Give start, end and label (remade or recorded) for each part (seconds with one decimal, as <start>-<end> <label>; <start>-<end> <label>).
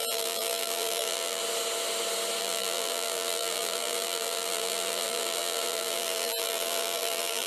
0.0-1.4 remade; 1.4-2.4 recorded; 2.4-7.5 remade